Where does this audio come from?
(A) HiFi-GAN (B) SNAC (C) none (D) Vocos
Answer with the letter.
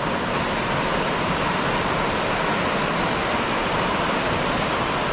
C